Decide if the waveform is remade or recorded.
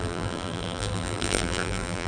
remade